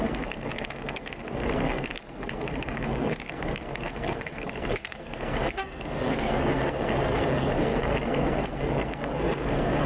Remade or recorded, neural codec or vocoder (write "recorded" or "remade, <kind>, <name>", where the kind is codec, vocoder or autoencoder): remade, codec, SNAC